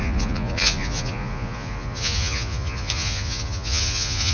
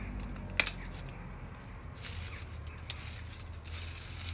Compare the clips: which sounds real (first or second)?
second